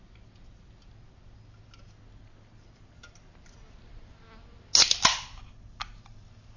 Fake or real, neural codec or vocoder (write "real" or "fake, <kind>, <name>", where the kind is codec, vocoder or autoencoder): real